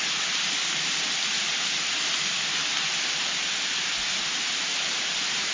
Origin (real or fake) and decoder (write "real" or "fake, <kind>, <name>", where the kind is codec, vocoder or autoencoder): real